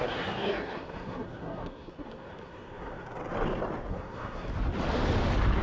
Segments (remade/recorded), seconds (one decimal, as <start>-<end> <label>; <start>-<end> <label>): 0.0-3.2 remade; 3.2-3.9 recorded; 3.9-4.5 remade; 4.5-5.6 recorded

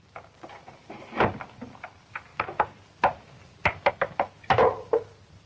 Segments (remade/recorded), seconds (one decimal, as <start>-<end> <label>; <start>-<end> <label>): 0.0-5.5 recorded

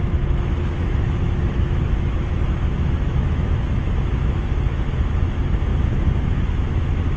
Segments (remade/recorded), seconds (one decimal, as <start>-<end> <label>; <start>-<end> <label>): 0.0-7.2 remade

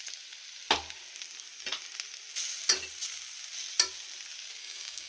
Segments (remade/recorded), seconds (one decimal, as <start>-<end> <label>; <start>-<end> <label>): 0.0-4.6 recorded; 4.6-5.1 remade

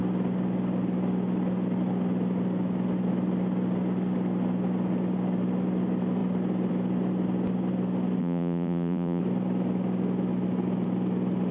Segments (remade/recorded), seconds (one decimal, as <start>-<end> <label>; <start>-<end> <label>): 0.0-8.2 recorded; 8.2-9.2 remade; 9.2-11.5 recorded